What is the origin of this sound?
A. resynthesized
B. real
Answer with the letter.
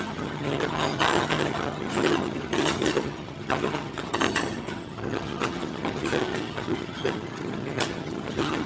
A